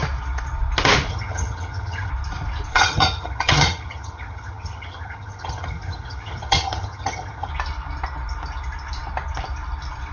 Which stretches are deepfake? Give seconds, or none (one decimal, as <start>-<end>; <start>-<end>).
1.1-2.1; 2.7-7.5